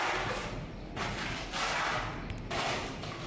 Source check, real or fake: real